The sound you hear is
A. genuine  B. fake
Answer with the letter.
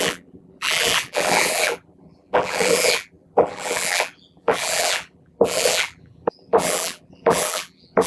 B